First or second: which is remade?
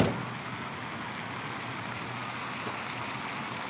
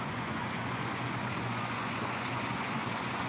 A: second